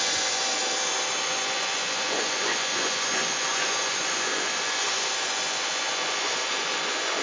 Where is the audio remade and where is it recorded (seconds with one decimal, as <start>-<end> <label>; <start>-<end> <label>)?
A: 0.0-0.6 remade; 0.6-1.2 recorded; 1.2-7.2 remade